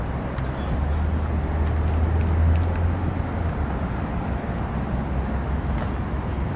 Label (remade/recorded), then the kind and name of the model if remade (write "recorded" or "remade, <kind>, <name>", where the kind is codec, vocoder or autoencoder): recorded